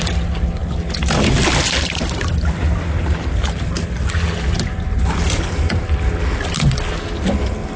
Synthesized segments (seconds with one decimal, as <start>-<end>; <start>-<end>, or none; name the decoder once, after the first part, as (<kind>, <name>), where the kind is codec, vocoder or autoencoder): none